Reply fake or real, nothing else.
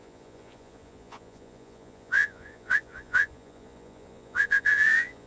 fake